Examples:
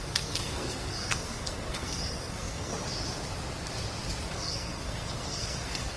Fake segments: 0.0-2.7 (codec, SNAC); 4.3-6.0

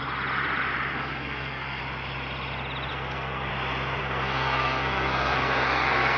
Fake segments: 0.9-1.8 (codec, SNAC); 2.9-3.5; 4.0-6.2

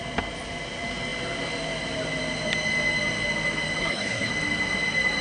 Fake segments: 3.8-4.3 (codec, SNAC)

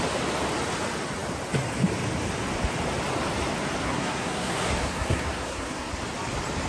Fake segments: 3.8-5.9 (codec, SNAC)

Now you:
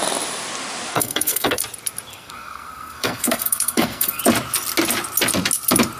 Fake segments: 0.9-1.6 (codec, SNAC); 2.1-4.2

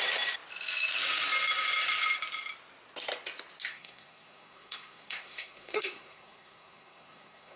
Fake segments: 3.7-7.6 (codec, SNAC)